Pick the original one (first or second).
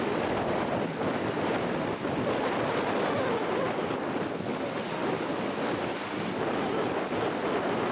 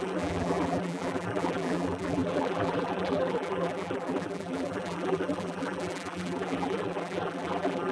first